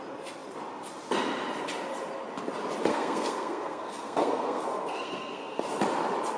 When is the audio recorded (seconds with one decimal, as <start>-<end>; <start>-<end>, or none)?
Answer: 0.0-2.9; 5.6-6.4